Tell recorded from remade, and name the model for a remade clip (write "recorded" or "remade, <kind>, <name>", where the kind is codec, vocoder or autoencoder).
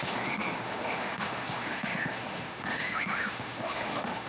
remade, autoencoder, DAC-VAE